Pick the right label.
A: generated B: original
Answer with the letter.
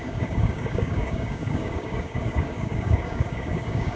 A